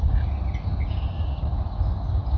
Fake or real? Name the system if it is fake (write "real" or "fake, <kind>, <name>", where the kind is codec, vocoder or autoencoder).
real